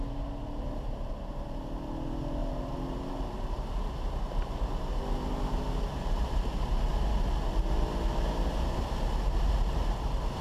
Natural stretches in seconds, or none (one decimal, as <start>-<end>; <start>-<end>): 0.0-2.4; 3.9-10.4